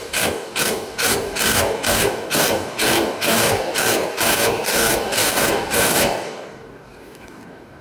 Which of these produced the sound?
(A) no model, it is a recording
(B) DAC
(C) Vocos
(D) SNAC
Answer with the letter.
B